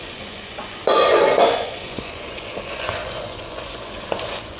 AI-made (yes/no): yes